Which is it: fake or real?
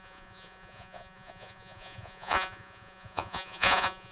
fake